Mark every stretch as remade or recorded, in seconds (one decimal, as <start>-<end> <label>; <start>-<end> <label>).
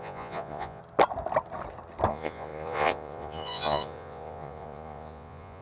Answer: 0.0-0.8 remade; 0.8-2.1 recorded; 2.1-5.6 remade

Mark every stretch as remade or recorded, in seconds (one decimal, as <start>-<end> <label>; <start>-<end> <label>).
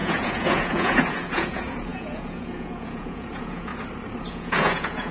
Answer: 0.0-3.7 remade; 3.7-4.3 recorded; 4.3-5.1 remade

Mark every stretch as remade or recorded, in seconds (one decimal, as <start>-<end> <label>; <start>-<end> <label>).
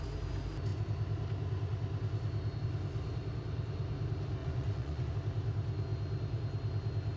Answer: 0.0-4.4 recorded; 4.4-5.1 remade; 5.1-7.2 recorded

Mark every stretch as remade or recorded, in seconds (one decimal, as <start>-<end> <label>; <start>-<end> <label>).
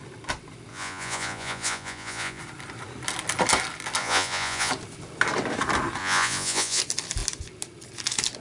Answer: 0.0-0.7 recorded; 0.7-2.4 remade; 2.4-4.0 recorded; 4.0-4.7 remade; 4.7-6.0 recorded; 6.0-6.8 remade; 6.8-8.4 recorded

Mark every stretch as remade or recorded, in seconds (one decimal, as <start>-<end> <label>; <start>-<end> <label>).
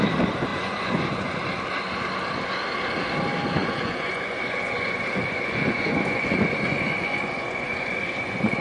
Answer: 0.0-0.5 recorded; 0.5-1.4 remade; 1.4-3.6 recorded; 3.6-8.6 remade